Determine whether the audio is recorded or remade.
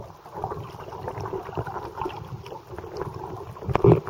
recorded